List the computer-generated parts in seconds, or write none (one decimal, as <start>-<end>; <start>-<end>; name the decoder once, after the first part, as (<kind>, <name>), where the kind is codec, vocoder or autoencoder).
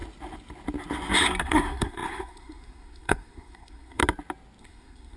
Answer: 1.4-4.0 (codec, SNAC); 4.6-5.2